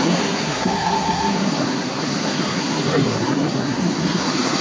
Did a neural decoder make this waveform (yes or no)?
yes